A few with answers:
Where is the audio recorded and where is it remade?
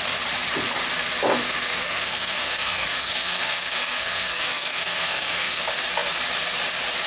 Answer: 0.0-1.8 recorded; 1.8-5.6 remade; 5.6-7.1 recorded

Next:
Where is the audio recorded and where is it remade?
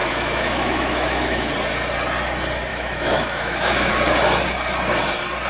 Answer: 0.0-1.5 remade; 1.5-2.7 recorded; 2.7-3.9 remade; 3.9-5.5 recorded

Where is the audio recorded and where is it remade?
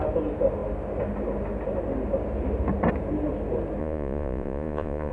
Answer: 0.0-3.8 recorded; 3.8-5.1 remade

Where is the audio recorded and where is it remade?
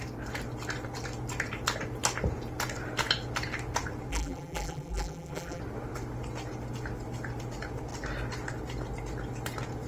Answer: 0.0-4.1 recorded; 4.1-5.6 remade; 5.6-9.9 recorded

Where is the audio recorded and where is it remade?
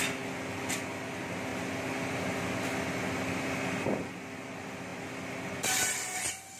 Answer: 0.0-6.6 recorded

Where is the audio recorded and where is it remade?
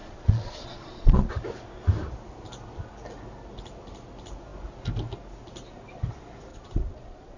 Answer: 0.0-1.3 remade; 1.3-6.5 recorded; 6.5-7.4 remade